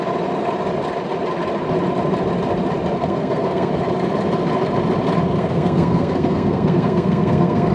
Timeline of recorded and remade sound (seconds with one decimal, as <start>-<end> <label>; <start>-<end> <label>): 0.0-3.0 recorded; 3.0-3.7 remade; 3.7-5.4 recorded; 5.4-7.7 remade